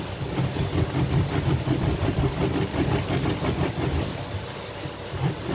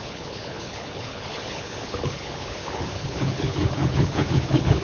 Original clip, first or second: first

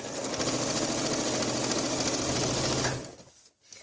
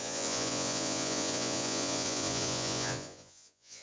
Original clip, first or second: first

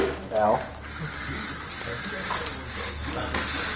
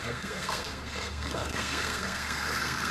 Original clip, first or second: first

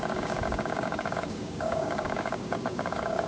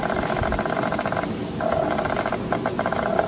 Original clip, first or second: second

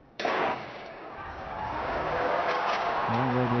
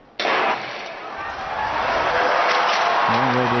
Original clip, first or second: second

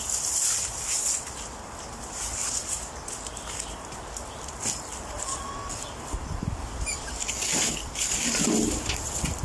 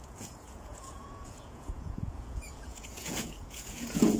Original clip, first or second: first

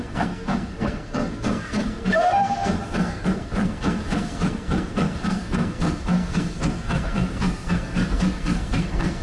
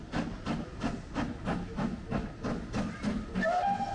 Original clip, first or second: second